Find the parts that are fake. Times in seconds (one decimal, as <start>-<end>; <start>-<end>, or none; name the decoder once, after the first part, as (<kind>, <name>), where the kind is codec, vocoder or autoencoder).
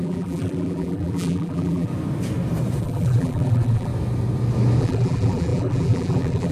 0.0-1.9 (vocoder, BigVGAN v2); 2.8-3.9; 4.8-6.5